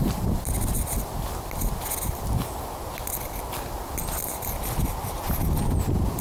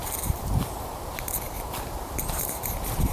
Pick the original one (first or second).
first